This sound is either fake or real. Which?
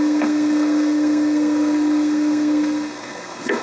fake